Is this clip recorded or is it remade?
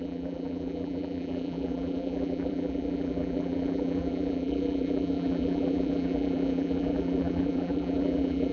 remade